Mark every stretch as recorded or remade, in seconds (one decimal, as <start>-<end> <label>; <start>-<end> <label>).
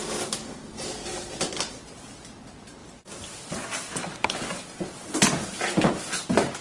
0.0-6.6 recorded